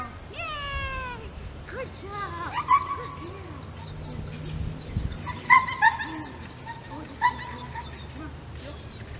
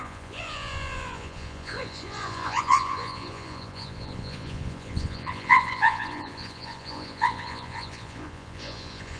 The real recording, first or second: first